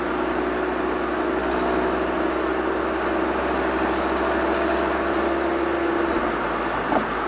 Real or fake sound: real